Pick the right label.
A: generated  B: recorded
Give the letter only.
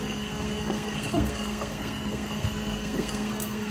A